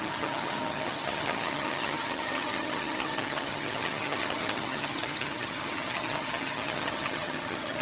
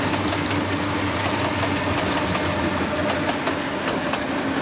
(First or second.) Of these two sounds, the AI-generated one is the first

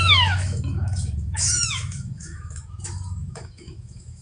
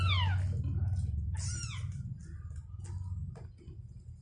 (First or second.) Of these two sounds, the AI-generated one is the first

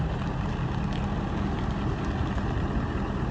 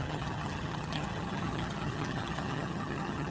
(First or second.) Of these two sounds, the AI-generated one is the second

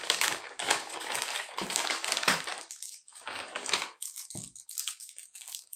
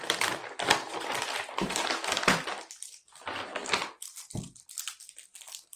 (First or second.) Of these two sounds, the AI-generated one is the first